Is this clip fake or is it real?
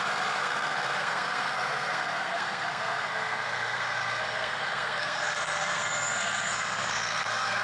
fake